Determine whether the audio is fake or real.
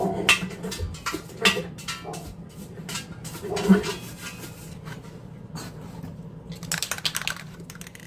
real